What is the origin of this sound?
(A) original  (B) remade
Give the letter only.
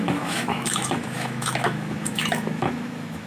B